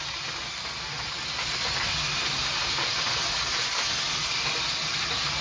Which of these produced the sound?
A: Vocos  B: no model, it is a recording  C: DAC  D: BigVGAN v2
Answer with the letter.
B